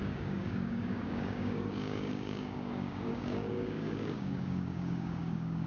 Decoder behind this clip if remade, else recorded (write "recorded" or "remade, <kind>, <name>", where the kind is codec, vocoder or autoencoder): remade, codec, DAC